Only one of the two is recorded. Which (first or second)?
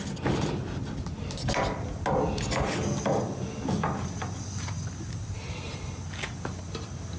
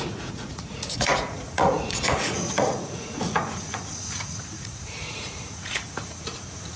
first